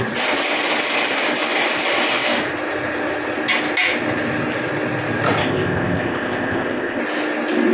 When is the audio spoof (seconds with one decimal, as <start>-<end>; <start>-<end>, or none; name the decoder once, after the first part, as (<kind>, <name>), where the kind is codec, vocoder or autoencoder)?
5.4-7.0 (codec, ZipCodec)